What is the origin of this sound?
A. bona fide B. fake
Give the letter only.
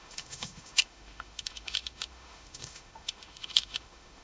B